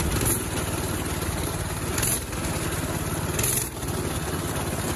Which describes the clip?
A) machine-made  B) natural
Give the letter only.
B